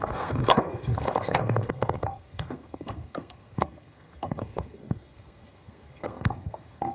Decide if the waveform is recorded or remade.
remade